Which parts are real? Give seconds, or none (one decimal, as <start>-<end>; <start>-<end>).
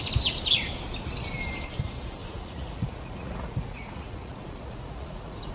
0.0-2.2